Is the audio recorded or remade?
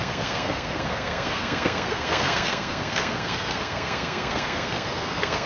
remade